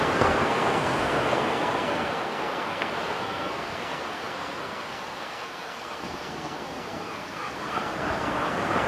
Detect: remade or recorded remade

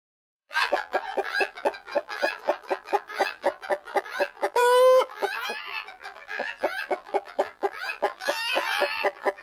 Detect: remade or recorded remade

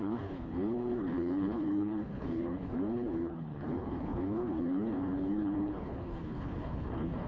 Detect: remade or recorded remade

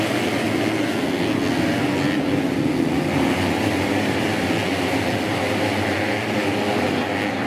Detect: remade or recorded recorded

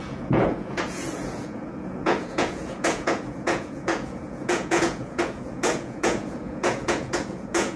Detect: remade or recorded remade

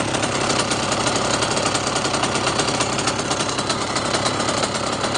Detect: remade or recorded recorded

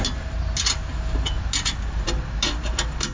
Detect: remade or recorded recorded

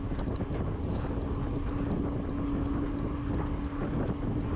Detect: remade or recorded recorded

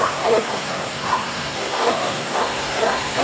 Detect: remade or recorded remade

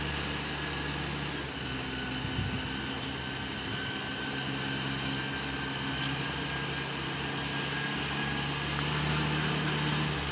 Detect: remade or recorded recorded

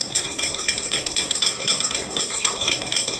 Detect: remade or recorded remade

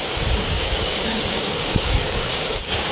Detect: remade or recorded remade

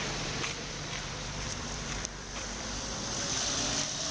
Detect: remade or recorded remade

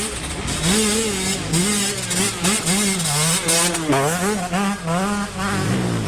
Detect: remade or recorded recorded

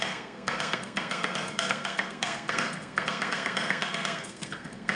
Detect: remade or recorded remade